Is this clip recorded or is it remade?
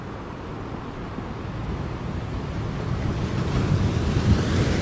recorded